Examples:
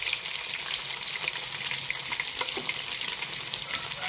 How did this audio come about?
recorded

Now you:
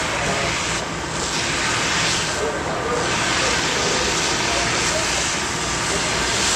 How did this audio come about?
recorded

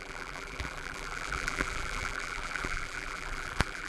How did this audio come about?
remade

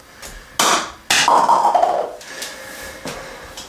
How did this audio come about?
recorded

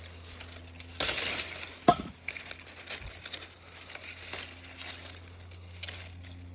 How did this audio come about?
recorded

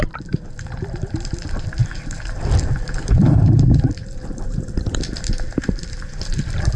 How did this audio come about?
remade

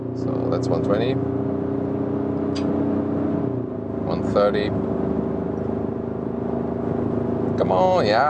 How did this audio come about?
recorded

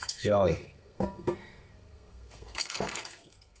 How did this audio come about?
remade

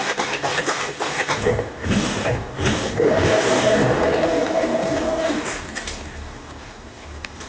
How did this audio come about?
remade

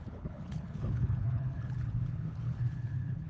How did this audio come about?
remade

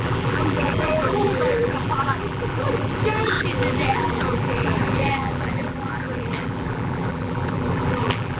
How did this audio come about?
remade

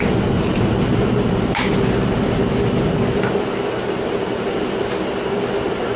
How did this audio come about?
recorded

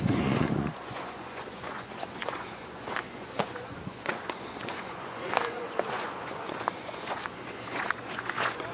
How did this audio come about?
remade